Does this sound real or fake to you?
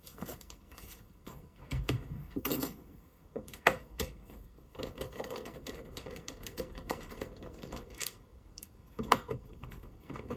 fake